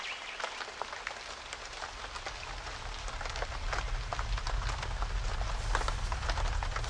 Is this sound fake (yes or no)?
no